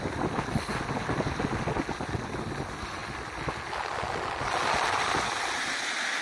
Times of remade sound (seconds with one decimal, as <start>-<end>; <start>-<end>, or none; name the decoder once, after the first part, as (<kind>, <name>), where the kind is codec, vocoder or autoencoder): none